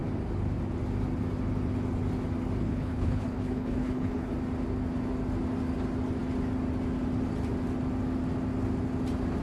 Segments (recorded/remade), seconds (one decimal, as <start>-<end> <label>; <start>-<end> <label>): 0.0-2.6 recorded; 2.6-4.3 remade; 4.3-9.4 recorded